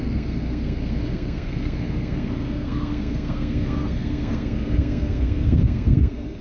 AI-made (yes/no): yes